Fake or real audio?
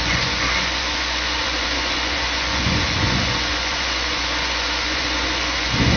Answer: fake